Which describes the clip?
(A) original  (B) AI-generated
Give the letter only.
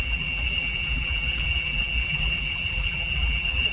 B